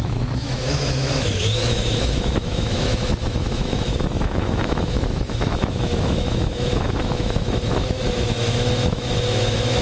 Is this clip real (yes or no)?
no